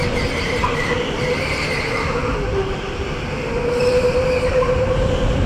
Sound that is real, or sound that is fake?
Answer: real